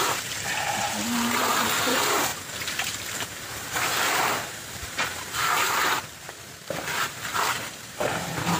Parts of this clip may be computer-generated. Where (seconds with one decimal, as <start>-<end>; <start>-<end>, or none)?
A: 0.0-7.3; 7.9-8.6